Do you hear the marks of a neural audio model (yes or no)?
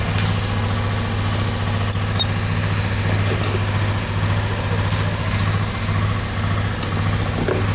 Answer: no